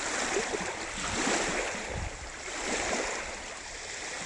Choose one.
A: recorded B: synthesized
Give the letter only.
A